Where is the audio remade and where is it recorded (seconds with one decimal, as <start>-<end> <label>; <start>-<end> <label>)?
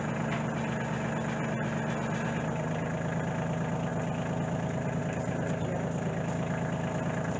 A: 0.0-7.4 recorded